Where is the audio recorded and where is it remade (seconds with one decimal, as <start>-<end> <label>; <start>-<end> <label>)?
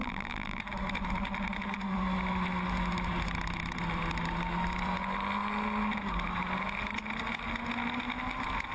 0.0-0.6 remade; 0.6-8.7 recorded